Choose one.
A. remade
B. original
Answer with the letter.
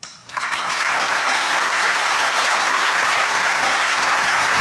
A